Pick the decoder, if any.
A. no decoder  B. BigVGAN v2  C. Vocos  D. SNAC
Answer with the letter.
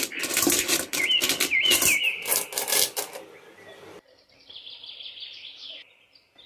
B